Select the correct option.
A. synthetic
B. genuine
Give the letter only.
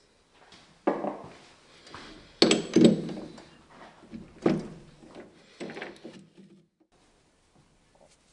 B